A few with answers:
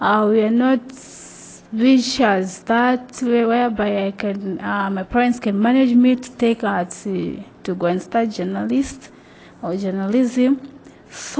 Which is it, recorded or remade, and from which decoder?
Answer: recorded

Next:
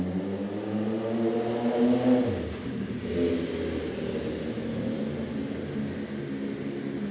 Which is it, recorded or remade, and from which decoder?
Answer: recorded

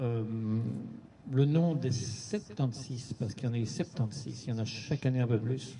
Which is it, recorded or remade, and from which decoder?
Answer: remade, codec, DAC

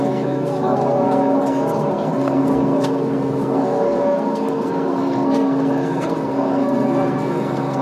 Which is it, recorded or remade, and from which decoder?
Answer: remade, codec, SNAC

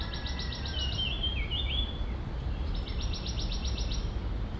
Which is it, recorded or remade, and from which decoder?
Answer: recorded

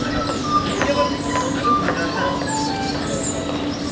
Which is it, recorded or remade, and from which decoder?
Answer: recorded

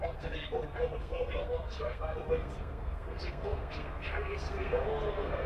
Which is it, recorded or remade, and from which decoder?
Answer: remade, codec, SNAC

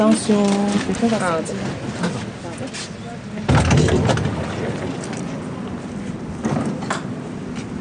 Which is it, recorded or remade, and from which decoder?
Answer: recorded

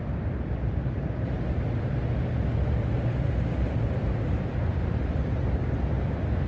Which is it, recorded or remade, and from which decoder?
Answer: recorded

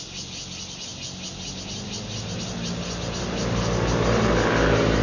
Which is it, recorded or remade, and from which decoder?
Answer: recorded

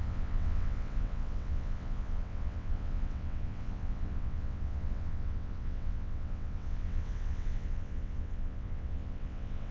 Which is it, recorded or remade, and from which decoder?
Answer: remade, vocoder, WaveNeXt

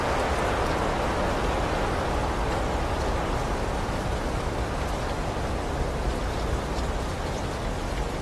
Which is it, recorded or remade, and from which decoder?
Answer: recorded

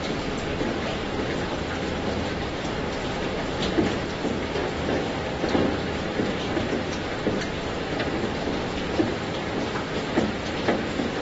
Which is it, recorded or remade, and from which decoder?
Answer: recorded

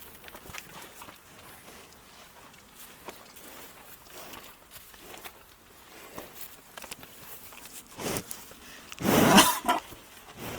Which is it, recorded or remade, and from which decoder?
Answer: recorded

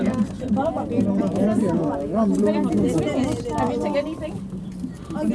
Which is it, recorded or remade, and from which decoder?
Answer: recorded